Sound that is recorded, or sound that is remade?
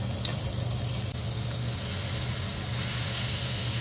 recorded